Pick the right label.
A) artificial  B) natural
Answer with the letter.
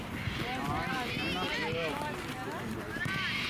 B